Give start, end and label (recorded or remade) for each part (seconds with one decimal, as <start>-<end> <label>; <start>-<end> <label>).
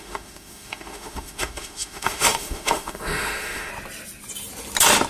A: 0.0-3.7 remade; 3.7-5.1 recorded